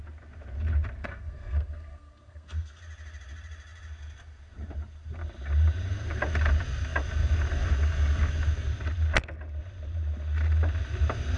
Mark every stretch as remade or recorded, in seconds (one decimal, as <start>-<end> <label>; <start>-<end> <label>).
0.0-1.0 recorded; 1.0-2.8 remade; 2.8-11.4 recorded